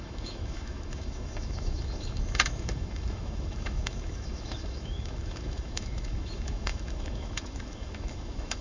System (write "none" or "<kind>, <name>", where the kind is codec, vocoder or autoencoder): autoencoder, DAC-VAE